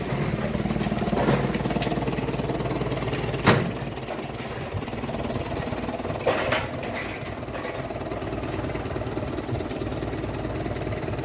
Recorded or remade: recorded